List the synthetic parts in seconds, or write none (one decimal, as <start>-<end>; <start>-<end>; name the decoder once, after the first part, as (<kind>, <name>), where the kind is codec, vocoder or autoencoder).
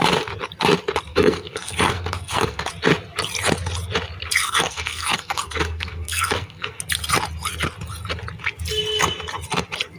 1.1-2.7 (codec, SNAC); 4.4-6.8